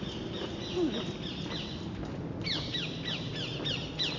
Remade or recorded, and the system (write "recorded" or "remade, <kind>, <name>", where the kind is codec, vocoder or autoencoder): recorded